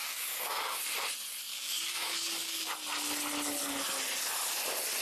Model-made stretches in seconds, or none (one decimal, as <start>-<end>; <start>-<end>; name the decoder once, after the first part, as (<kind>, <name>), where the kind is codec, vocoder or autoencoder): 0.0-0.8 (codec, DAC); 1.5-2.7